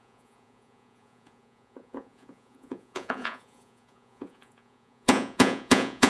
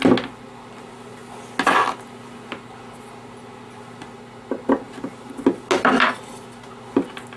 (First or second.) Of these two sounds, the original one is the second